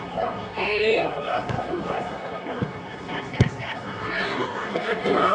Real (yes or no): no